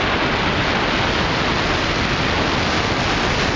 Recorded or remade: recorded